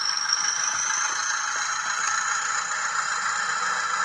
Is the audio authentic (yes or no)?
yes